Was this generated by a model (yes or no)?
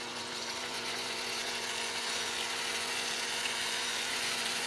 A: yes